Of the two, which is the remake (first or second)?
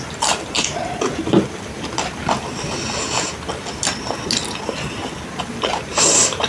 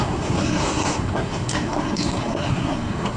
second